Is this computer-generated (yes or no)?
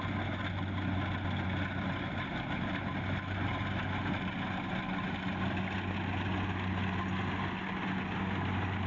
no